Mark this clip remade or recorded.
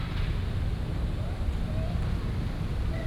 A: recorded